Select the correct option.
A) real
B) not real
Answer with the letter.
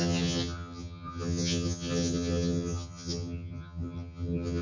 B